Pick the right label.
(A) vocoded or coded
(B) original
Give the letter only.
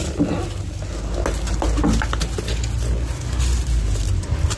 B